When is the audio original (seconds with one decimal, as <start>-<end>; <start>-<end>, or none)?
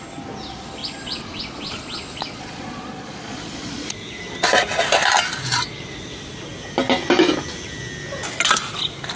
0.0-0.8; 4.1-9.2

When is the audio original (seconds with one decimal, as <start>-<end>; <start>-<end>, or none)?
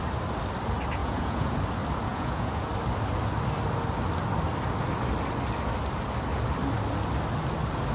0.0-1.0; 1.6-2.1; 2.7-7.9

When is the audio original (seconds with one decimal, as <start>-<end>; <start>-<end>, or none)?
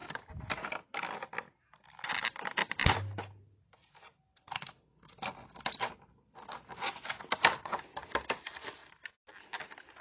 0.0-10.0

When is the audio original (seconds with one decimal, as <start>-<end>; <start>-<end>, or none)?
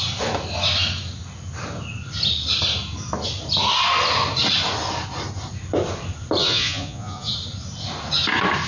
0.0-6.4; 7.3-8.7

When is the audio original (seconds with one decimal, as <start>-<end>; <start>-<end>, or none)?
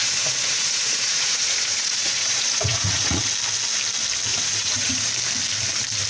3.2-4.3; 5.1-6.1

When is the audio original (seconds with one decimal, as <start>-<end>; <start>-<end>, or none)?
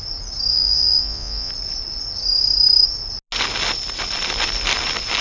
0.0-0.5; 1.5-5.2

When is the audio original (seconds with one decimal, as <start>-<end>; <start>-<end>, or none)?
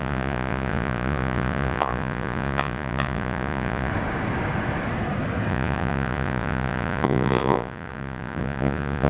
3.9-5.5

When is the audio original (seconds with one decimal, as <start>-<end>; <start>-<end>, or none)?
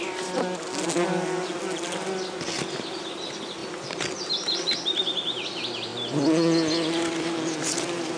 0.0-8.2